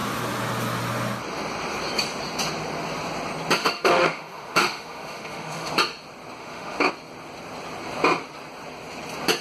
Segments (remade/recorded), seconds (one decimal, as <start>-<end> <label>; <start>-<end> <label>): 0.0-3.6 recorded; 3.6-5.7 remade; 5.7-6.4 recorded; 6.4-6.9 remade; 6.9-9.4 recorded